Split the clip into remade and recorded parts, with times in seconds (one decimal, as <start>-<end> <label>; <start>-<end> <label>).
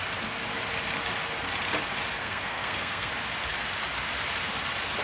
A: 0.0-2.2 recorded; 2.2-3.1 remade; 3.1-5.0 recorded